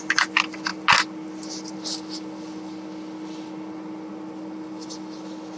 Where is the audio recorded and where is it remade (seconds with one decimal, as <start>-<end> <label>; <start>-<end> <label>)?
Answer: 0.0-5.6 recorded